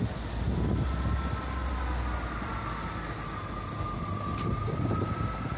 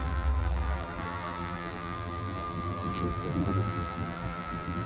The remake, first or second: second